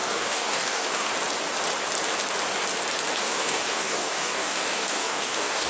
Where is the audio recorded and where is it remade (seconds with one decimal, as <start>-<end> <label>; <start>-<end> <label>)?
0.0-1.1 remade; 1.1-3.2 recorded; 3.2-5.7 remade